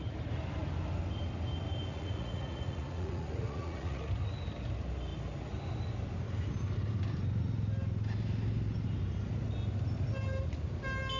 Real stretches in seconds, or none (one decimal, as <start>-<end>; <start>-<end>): 0.0-1.9; 4.1-11.2